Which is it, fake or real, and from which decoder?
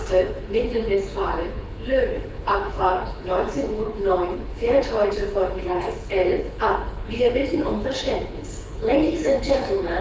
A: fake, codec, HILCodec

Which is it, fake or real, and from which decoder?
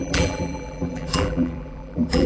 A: fake, vocoder, BigVGAN v2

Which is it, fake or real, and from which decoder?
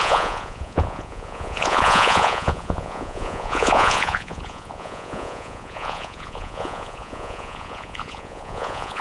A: fake, vocoder, Vocos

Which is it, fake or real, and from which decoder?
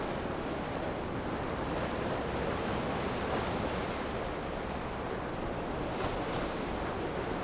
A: real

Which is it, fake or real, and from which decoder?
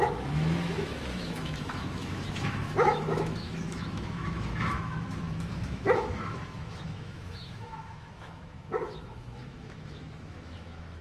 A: fake, autoencoder, DAC-VAE